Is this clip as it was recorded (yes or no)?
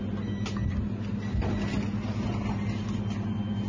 yes